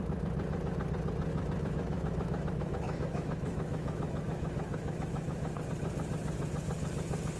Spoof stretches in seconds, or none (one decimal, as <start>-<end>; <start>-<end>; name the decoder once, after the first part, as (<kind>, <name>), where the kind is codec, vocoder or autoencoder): 1.3-5.7 (autoencoder, DAC-VAE)